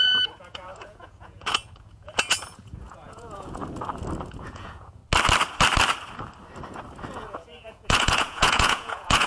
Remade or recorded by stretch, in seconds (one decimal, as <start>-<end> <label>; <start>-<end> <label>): 0.0-3.6 remade; 3.6-4.3 recorded; 4.3-5.0 remade; 5.0-7.1 recorded; 7.1-9.3 remade